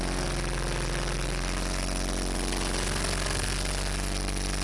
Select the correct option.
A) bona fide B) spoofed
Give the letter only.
A